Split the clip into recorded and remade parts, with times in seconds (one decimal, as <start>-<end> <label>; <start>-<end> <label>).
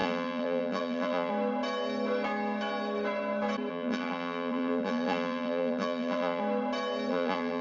0.0-1.3 remade; 1.3-3.7 recorded; 3.7-6.4 remade; 6.4-7.1 recorded; 7.1-7.6 remade